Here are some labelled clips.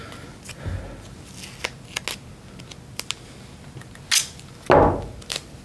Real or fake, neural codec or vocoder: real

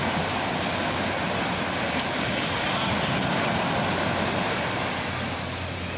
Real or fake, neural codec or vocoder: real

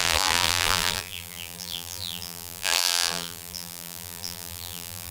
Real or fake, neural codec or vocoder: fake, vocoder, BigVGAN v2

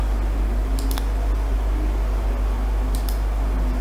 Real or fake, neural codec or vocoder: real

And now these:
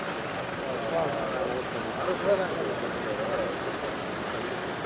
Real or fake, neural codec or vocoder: real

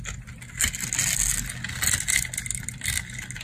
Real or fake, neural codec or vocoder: real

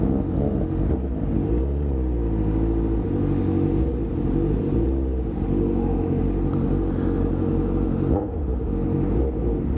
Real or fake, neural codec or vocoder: real